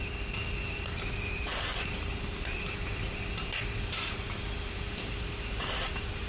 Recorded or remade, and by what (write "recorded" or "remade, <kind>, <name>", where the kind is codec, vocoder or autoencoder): recorded